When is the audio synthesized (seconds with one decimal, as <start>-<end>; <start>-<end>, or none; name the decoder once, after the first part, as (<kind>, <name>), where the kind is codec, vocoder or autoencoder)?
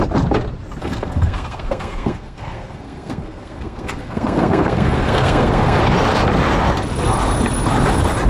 0.8-5.8 (codec, SNAC)